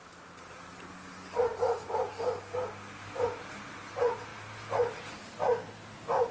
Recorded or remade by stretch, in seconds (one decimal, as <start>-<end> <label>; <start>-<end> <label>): 0.0-6.3 recorded